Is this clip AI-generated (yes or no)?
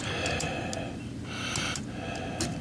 no